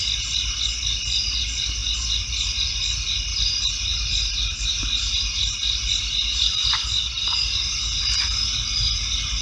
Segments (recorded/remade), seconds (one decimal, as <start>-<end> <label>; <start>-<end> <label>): 0.0-3.3 recorded; 3.3-8.0 remade; 8.0-9.4 recorded